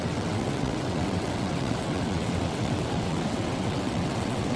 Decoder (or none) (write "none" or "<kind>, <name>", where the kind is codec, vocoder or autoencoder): vocoder, WaveNeXt